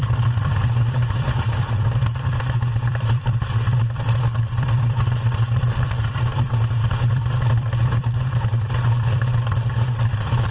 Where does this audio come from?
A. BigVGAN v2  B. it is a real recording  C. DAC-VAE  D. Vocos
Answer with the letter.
A